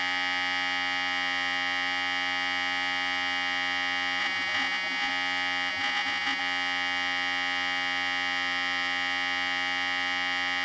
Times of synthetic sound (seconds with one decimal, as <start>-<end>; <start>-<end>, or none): 4.2-5.1; 5.7-6.4